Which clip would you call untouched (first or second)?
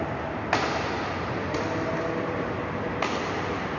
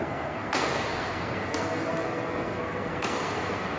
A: first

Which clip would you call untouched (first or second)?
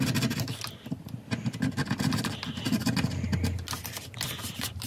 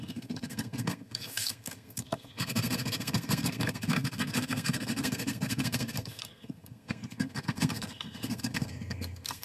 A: first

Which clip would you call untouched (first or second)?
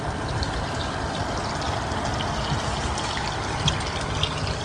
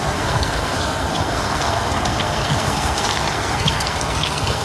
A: first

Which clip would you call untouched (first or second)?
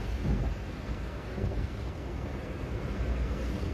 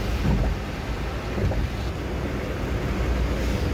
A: second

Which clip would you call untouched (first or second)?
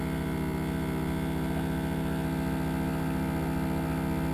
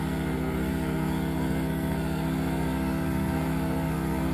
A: first